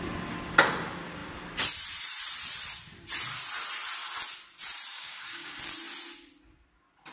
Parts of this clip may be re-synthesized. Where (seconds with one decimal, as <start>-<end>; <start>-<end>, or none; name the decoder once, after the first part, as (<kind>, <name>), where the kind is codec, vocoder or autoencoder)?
4.9-5.6 (codec, DAC)